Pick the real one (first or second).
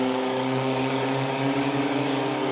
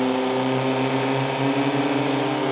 second